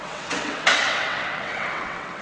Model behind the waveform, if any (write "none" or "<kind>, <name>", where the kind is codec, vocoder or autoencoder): vocoder, WaveNeXt